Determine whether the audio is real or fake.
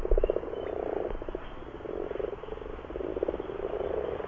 real